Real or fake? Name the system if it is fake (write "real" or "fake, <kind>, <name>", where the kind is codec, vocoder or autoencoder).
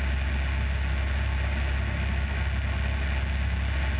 real